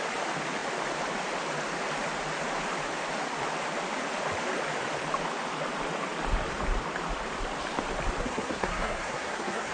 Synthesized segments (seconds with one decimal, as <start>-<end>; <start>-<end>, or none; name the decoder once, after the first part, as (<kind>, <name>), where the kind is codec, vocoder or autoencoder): 8.2-9.7 (codec, SNAC)